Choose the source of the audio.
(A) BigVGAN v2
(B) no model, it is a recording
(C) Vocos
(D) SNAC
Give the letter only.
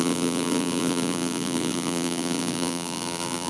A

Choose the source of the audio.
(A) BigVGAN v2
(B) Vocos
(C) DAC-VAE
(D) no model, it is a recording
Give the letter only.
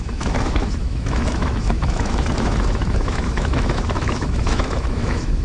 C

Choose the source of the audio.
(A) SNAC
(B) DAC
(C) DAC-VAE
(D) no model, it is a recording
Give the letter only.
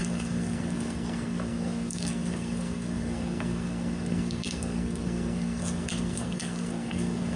A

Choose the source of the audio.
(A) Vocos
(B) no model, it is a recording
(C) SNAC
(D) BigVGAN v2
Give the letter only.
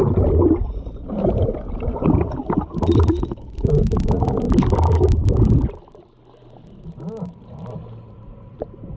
B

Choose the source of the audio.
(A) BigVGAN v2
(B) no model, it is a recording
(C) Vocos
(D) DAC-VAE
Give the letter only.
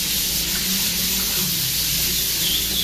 B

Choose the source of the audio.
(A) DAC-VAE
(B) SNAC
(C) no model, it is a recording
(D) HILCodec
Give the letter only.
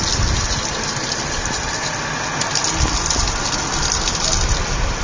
C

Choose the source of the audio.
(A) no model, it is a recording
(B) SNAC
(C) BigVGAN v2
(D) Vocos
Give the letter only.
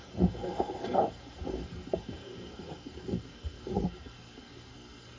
B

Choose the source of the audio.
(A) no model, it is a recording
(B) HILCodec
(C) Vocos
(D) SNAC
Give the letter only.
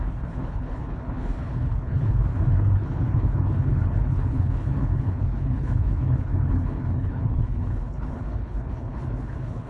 B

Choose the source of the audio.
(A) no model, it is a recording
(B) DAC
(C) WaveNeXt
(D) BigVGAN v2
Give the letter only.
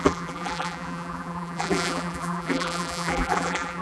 D